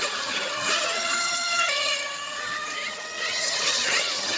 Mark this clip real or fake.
fake